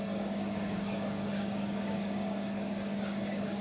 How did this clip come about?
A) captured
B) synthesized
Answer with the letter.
B